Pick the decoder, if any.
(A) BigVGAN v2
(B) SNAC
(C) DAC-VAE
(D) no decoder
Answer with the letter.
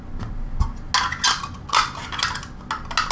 D